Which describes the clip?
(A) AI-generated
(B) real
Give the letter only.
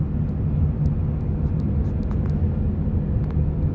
B